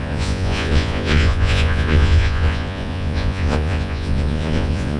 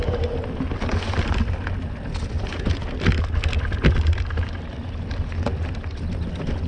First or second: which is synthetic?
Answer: first